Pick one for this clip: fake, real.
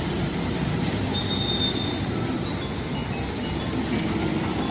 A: real